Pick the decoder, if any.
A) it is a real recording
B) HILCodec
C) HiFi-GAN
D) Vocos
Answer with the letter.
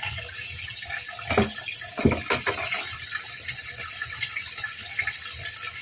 A